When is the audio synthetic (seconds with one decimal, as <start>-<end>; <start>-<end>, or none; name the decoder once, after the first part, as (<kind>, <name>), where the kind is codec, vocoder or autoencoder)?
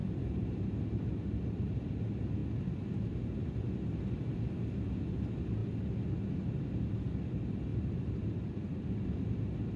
0.0-1.1 (vocoder, BigVGAN v2); 5.6-7.3; 7.7-8.8